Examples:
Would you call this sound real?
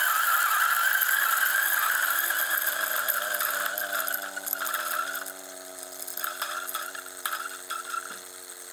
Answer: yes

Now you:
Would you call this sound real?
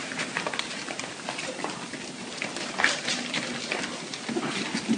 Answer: yes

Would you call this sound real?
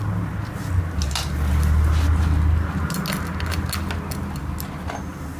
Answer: yes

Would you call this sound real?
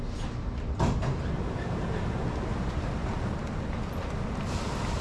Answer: yes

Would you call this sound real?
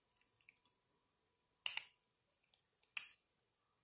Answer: yes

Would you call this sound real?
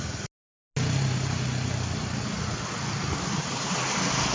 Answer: yes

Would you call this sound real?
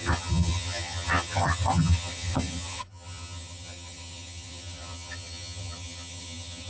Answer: no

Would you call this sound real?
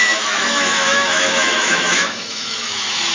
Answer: no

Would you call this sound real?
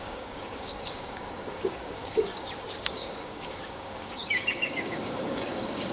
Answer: no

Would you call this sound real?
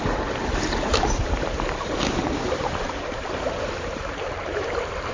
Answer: no